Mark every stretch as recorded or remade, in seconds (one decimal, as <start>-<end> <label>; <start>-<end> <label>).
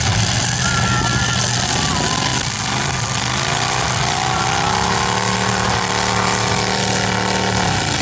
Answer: 0.0-8.0 recorded